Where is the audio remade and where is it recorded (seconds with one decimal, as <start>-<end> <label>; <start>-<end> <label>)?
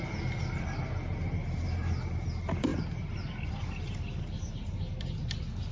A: 0.0-5.7 recorded